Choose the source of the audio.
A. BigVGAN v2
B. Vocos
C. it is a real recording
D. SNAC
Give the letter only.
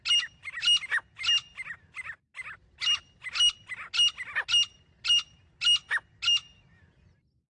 C